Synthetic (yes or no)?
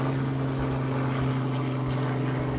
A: no